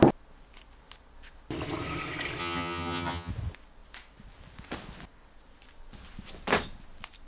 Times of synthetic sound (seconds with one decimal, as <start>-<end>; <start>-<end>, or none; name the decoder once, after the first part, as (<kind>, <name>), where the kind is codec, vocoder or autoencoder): 2.4-3.3 (vocoder, HiFi-GAN)

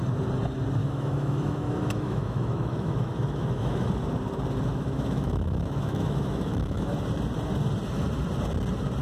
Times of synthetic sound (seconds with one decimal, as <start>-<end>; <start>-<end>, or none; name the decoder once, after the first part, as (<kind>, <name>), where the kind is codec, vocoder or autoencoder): 0.8-3.9 (autoencoder, DAC-VAE); 4.7-6.9

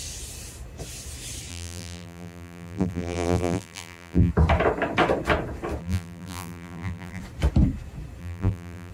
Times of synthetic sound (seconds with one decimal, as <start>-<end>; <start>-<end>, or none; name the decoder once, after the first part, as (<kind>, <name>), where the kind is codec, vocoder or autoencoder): 1.5-4.3 (vocoder, BigVGAN v2); 5.8-7.2; 8.2-8.9

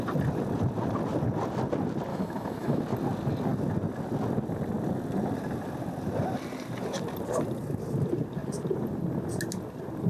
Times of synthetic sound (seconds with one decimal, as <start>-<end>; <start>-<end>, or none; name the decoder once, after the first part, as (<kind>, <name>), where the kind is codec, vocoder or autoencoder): 2.1-2.8 (autoencoder, DAC-VAE)

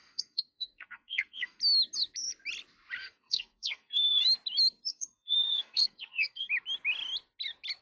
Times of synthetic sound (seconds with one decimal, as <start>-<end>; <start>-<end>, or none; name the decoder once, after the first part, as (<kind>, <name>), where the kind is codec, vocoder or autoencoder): 0.0-1.6 (codec, SNAC); 3.0-4.2; 4.9-6.5

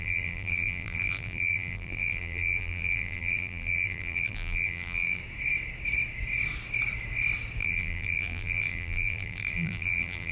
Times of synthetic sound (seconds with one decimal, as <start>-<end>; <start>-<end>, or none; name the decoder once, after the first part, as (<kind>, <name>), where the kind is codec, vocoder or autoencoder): 0.0-5.2 (vocoder, BigVGAN v2); 7.6-10.3

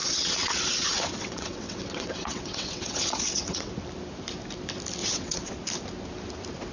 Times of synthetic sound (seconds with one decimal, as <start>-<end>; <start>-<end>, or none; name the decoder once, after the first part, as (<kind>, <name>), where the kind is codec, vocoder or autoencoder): 0.0-3.7 (vocoder, WaveNeXt); 5.0-5.5